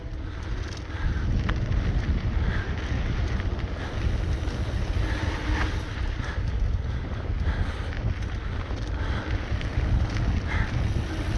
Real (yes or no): yes